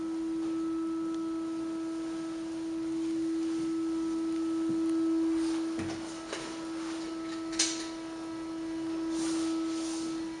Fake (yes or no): no